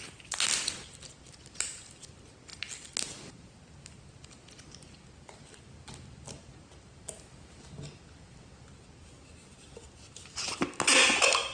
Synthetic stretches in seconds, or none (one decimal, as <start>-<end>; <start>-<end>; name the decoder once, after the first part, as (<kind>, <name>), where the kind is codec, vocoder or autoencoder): none